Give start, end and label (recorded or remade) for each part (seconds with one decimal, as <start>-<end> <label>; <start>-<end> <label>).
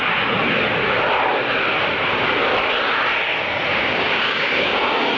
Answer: 0.0-3.7 recorded; 3.7-5.2 remade